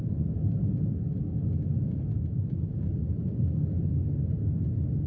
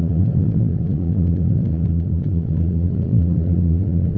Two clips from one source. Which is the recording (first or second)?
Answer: first